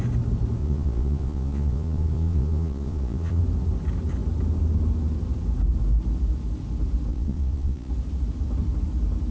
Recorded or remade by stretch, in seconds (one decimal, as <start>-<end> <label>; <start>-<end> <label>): 0.0-0.6 recorded; 0.6-3.4 remade; 3.4-7.1 recorded; 7.1-7.9 remade; 7.9-9.3 recorded